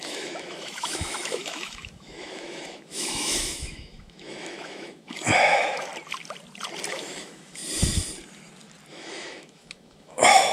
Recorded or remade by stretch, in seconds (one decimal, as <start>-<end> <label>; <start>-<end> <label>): 0.0-5.9 remade; 5.9-6.9 recorded; 6.9-7.6 remade; 7.6-8.9 recorded; 8.9-10.5 remade